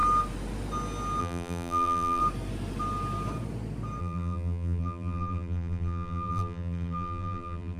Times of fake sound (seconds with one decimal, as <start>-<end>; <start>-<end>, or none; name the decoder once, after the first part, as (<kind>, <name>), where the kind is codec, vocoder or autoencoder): 1.2-2.2 (vocoder, BigVGAN v2); 4.0-7.8